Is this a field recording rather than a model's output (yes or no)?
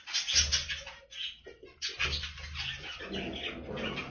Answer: yes